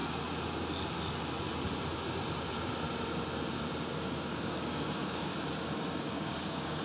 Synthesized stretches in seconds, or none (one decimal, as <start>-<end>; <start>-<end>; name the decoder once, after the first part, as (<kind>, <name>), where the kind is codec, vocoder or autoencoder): 4.1-5.3 (codec, DAC); 6.0-6.8